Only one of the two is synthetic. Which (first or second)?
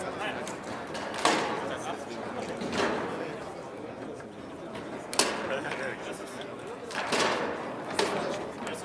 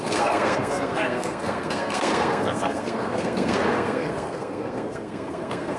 second